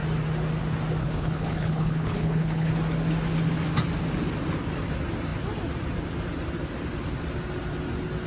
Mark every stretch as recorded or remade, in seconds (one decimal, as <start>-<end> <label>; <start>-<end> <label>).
0.0-1.0 recorded; 1.0-2.7 remade; 2.7-8.3 recorded